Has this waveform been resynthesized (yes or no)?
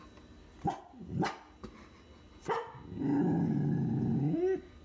no